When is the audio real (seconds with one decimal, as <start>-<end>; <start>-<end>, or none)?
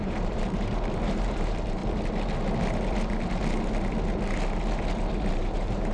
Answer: 1.8-5.3